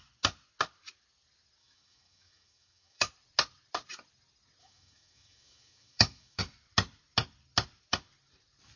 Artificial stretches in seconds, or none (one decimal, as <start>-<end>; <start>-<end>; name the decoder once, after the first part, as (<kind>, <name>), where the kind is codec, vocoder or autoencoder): 1.6-3.1 (autoencoder, DAC-VAE); 4.6-6.4